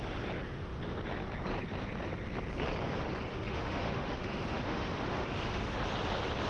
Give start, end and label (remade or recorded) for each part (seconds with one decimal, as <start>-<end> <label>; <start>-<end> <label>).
0.0-3.3 recorded; 3.3-5.8 remade; 5.8-6.5 recorded